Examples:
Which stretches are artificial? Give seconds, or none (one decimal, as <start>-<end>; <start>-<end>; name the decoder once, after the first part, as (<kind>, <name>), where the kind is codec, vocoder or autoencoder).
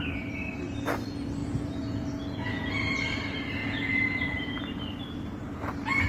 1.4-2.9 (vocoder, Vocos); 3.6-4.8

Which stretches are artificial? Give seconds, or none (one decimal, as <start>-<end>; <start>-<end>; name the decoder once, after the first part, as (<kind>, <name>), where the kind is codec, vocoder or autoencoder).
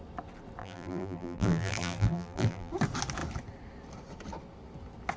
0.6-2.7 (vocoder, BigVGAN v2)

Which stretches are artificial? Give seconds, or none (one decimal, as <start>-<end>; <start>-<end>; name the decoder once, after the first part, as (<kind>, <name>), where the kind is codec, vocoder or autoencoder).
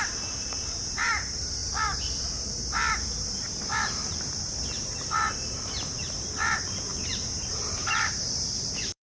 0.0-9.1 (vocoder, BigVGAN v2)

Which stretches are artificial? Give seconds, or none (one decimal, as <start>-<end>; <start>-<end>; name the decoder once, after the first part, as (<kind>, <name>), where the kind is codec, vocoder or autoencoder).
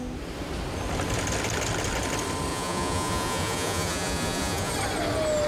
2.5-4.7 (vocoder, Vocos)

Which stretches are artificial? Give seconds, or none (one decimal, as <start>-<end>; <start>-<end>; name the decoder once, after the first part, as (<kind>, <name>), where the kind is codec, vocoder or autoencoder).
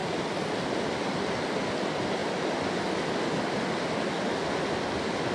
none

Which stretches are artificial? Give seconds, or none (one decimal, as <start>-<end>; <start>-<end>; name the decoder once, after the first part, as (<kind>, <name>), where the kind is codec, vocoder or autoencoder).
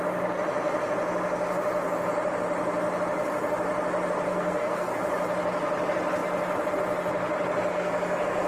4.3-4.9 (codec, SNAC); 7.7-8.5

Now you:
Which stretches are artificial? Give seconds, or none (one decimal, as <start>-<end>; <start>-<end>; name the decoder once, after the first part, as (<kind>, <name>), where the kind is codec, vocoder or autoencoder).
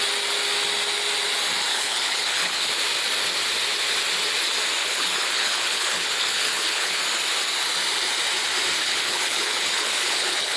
1.7-2.7 (codec, HILCodec); 4.8-7.0; 8.8-10.6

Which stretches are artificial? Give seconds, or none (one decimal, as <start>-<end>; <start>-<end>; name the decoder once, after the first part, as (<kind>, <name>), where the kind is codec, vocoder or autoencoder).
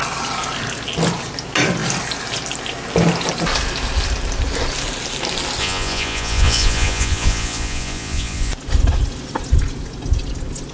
5.6-8.5 (vocoder, Vocos)